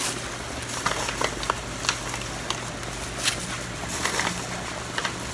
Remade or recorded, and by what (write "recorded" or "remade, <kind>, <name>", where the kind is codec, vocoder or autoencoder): recorded